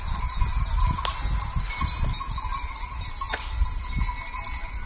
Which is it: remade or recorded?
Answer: recorded